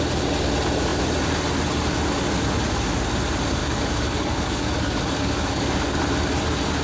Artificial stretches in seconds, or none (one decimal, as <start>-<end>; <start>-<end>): 3.6-6.0